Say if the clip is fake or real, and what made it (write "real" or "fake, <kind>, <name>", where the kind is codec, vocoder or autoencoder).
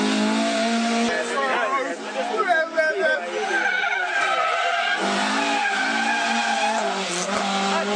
real